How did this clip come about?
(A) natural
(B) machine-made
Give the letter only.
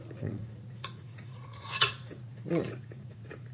B